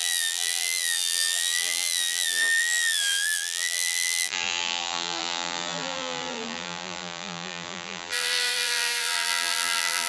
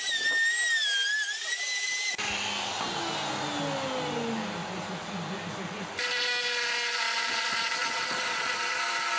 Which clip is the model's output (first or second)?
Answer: first